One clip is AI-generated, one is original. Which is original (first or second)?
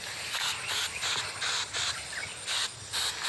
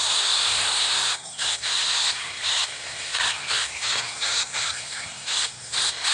first